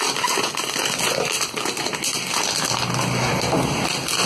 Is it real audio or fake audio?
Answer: real